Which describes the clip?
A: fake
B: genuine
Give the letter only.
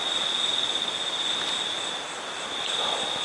B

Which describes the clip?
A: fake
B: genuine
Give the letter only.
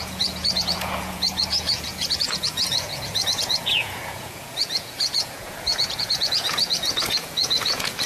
A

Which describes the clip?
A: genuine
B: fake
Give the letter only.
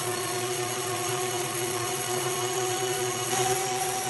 B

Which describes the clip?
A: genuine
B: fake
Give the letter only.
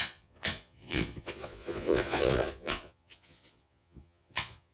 B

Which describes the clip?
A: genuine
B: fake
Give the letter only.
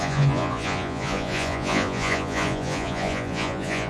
B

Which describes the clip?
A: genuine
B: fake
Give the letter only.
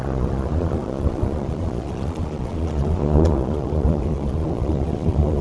B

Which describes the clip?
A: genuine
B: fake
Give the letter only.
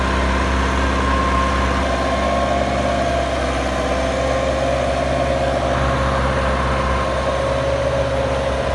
A